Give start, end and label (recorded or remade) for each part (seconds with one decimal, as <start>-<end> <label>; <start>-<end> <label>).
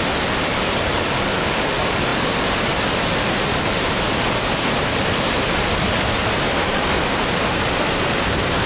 0.0-8.7 remade